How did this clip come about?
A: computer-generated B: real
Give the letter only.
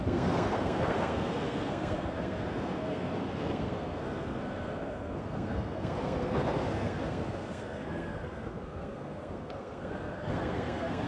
A